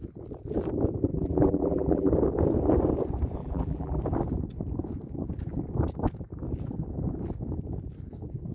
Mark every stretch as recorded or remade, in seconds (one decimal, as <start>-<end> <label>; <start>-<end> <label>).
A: 0.0-1.1 recorded; 1.1-2.1 remade; 2.1-3.4 recorded; 3.4-4.0 remade; 4.0-8.5 recorded